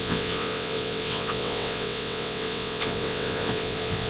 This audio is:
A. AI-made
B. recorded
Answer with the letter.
A